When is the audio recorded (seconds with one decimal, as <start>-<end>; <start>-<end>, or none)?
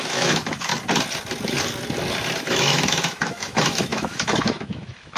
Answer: 0.7-2.4